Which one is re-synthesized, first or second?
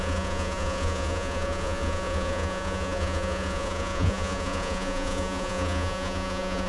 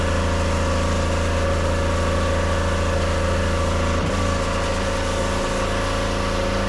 first